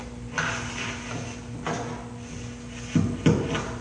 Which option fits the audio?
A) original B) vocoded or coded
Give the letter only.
A